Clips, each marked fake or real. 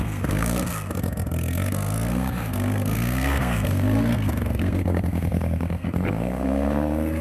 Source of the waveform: fake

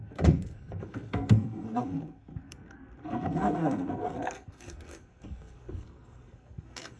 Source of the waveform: fake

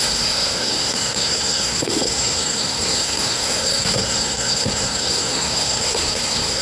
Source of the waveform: fake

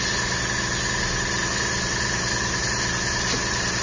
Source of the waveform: real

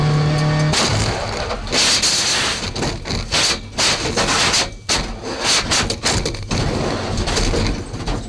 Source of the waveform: real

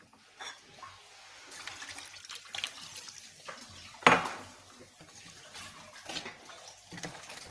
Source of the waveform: real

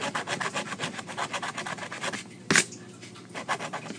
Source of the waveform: real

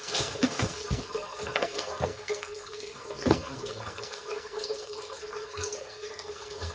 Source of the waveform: fake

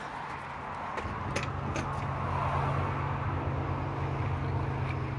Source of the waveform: real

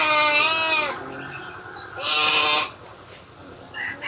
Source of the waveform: real